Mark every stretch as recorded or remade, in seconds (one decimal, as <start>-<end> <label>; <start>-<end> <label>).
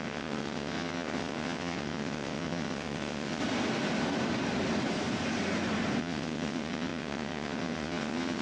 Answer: 0.0-3.4 remade; 3.4-6.0 recorded; 6.0-8.4 remade